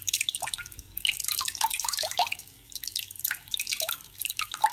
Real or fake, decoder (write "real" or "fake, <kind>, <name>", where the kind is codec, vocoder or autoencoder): fake, codec, DAC